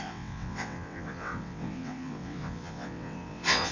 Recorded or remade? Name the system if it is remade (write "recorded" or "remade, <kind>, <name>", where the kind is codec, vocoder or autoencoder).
remade, vocoder, WaveNeXt